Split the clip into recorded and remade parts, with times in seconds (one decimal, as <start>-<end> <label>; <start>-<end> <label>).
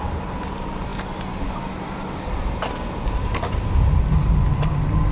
0.0-5.1 recorded